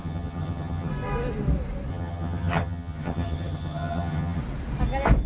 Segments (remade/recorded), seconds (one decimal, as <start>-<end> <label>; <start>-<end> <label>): 0.0-0.9 remade; 0.9-1.9 recorded; 1.9-4.4 remade; 4.4-5.3 recorded